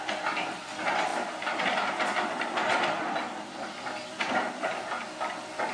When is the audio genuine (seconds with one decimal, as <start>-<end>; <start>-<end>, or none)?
0.0-5.7